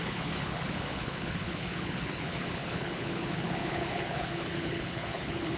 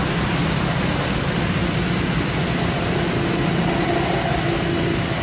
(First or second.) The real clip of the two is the second